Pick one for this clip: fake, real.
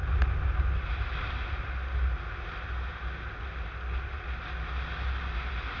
real